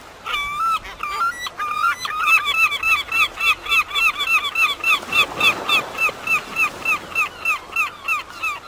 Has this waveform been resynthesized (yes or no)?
no